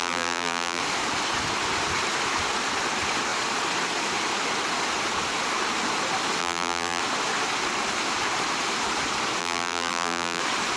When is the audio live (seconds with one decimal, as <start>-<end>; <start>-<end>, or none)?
0.8-6.4; 7.0-9.4; 10.4-10.8